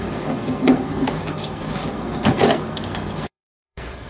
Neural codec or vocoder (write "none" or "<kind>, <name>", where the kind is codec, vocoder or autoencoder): codec, SNAC